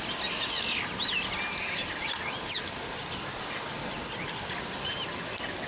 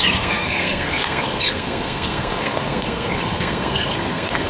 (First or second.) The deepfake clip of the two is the second